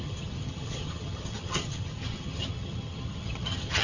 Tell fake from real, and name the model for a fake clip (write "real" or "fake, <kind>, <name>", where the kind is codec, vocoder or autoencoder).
fake, vocoder, HiFi-GAN